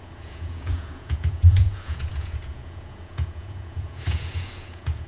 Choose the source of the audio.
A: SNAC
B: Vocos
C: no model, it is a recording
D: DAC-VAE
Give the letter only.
B